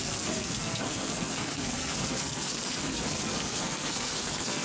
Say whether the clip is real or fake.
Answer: fake